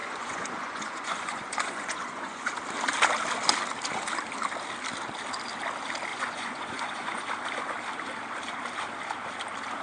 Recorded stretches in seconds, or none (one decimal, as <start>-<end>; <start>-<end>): 2.5-6.1; 7.2-9.8